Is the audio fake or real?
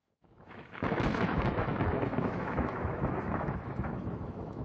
fake